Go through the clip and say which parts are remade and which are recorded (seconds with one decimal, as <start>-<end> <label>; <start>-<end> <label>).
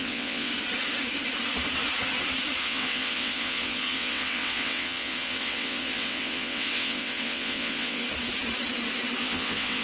0.0-0.5 remade; 0.5-2.6 recorded; 2.6-8.0 remade; 8.0-9.2 recorded; 9.2-9.8 remade